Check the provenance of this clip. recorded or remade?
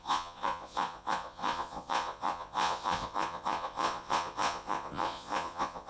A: remade